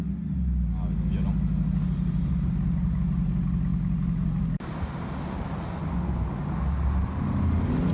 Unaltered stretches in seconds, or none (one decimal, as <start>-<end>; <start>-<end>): 0.0-7.9